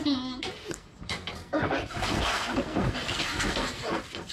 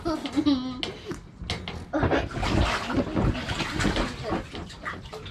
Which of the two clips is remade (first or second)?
first